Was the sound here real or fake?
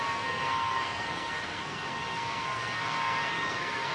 fake